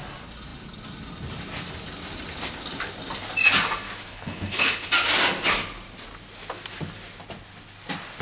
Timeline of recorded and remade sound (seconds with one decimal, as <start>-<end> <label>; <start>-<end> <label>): 0.0-4.1 recorded; 4.1-4.9 remade; 4.9-8.2 recorded